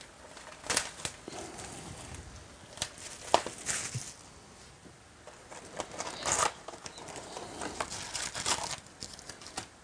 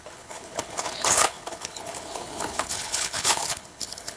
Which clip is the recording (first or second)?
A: first